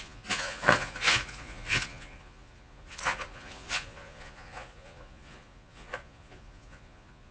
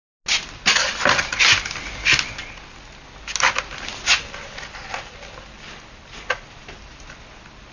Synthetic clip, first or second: first